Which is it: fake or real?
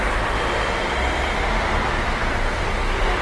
real